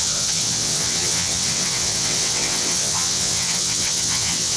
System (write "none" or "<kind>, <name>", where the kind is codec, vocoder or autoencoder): vocoder, WaveNeXt